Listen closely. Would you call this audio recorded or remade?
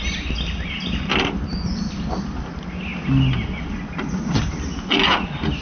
recorded